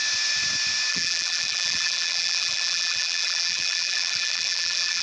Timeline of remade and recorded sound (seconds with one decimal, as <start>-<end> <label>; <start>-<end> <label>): 0.0-0.9 recorded; 0.9-5.0 remade